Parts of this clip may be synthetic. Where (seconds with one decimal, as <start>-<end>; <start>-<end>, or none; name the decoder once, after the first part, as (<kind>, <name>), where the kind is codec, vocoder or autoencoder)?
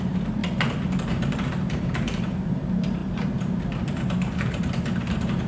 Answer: 0.0-0.4 (vocoder, BigVGAN v2); 1.1-5.5